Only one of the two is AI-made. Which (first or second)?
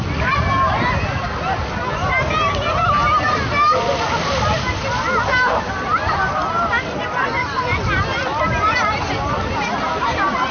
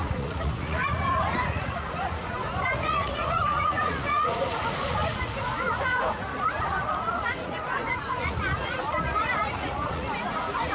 second